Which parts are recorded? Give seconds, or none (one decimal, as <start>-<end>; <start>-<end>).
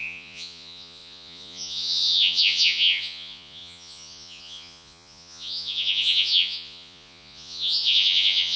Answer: none